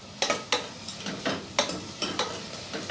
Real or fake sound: real